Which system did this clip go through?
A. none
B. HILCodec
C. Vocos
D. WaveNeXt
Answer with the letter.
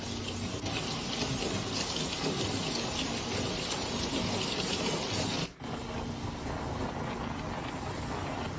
A